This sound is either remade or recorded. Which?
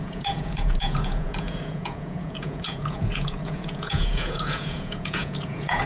remade